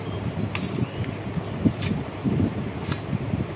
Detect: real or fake real